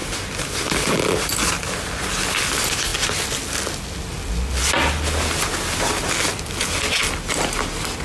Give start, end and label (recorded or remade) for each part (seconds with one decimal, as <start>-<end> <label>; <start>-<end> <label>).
0.0-8.0 recorded